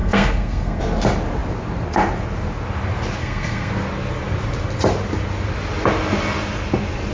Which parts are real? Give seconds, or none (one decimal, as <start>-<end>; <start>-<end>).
0.8-3.2; 3.7-7.1